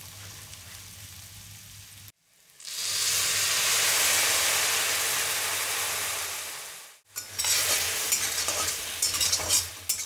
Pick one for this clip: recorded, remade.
recorded